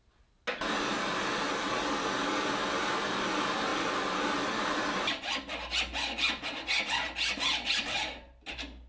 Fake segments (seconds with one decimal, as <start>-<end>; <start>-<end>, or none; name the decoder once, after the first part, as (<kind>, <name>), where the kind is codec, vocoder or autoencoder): none